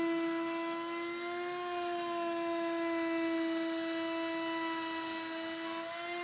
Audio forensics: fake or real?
real